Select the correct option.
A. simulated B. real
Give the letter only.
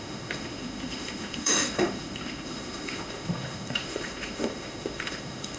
A